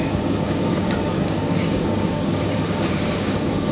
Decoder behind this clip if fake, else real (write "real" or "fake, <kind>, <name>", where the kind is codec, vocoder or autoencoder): fake, codec, DAC